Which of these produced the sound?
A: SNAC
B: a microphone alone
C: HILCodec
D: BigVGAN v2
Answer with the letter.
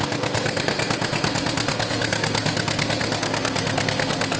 A